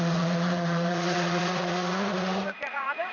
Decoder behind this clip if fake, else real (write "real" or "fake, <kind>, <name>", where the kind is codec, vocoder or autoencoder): fake, vocoder, Vocos